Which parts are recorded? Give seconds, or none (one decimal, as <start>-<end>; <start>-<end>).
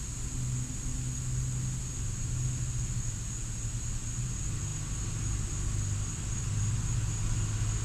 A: 0.0-7.8